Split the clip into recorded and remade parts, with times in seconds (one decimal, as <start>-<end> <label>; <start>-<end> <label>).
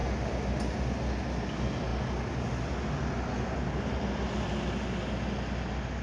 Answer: 0.0-6.0 recorded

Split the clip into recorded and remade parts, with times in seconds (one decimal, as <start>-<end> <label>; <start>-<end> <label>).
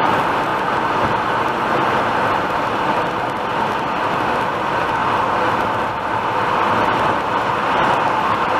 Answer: 0.0-8.6 recorded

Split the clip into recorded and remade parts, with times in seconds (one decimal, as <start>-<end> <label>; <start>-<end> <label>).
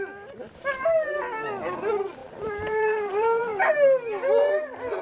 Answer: 0.0-2.2 recorded; 2.2-3.8 remade; 3.8-5.0 recorded